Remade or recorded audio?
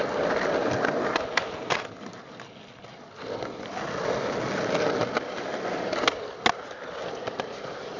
recorded